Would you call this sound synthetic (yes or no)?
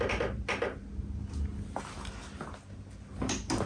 no